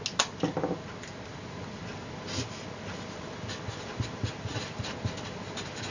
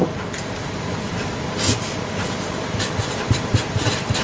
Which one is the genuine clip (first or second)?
first